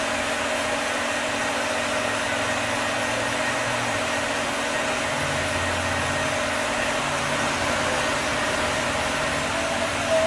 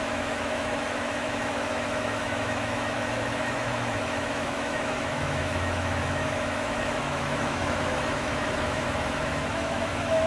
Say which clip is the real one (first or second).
first